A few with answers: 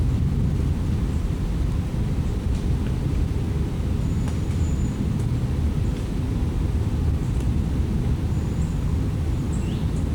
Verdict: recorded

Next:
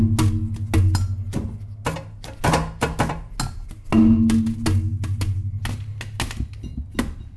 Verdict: recorded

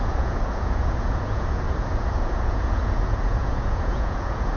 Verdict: remade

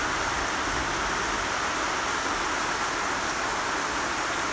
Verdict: recorded